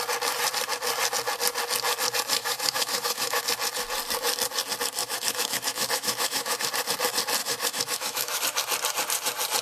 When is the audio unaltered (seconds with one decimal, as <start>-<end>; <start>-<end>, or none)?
0.0-2.4; 3.4-5.0; 6.7-7.4; 8.4-9.6